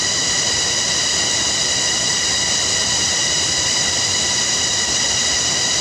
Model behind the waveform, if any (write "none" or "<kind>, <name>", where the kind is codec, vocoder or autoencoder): vocoder, BigVGAN v2